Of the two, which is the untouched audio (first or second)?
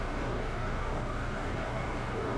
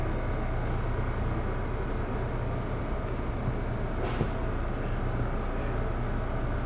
second